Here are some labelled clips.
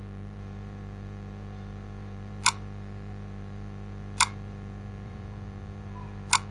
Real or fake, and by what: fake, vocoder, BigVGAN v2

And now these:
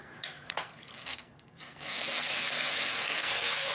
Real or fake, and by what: fake, codec, SNAC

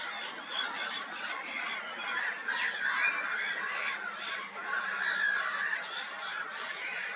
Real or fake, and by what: real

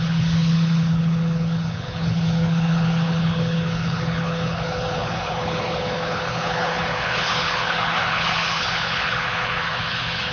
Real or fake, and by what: fake, codec, HILCodec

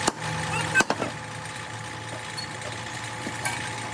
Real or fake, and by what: real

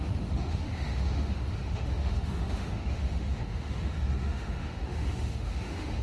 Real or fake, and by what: fake, autoencoder, DAC-VAE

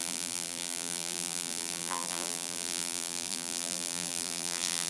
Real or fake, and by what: fake, vocoder, BigVGAN v2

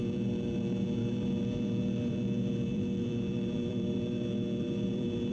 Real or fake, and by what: fake, vocoder, BigVGAN v2